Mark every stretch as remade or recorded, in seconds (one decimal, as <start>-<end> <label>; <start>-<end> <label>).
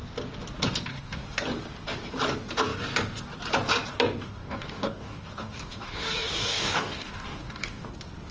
0.0-0.9 recorded; 0.9-1.4 remade; 1.4-4.2 recorded; 4.2-7.9 remade; 7.9-8.3 recorded